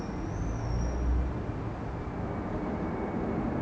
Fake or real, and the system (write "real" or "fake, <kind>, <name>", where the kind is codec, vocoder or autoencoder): real